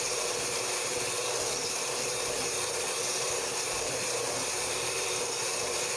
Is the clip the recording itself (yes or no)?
no